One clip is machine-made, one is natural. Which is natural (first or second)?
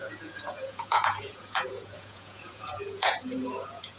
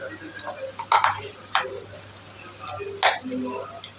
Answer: second